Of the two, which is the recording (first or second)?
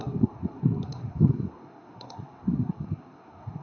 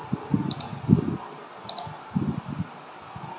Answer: second